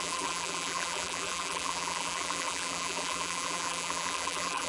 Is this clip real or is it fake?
fake